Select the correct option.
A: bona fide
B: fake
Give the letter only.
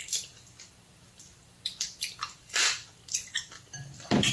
B